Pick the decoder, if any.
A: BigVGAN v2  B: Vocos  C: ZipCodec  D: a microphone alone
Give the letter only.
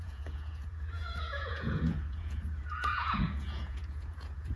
B